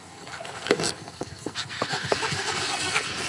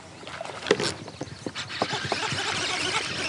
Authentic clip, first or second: second